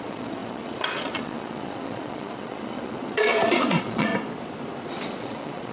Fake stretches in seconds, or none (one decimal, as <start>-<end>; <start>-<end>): 0.0-4.1; 4.9-5.7